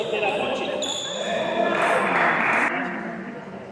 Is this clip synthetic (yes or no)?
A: no